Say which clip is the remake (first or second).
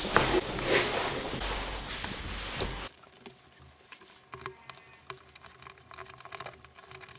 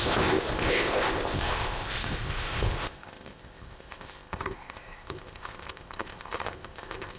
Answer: second